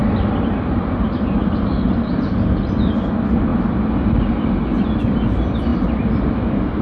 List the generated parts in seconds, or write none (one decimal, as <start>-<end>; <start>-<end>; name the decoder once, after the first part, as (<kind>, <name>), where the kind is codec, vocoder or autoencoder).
none